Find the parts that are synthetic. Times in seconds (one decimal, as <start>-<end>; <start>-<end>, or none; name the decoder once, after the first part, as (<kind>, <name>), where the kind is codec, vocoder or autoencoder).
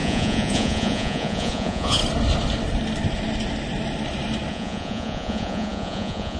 0.0-2.0 (vocoder, Vocos); 4.5-6.4